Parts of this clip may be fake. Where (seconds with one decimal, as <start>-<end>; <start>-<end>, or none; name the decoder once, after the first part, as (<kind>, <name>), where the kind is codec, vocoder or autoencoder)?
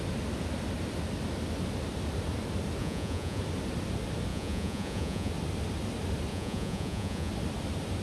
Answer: 2.8-3.4 (vocoder, Vocos); 4.3-5.3; 6.3-7.3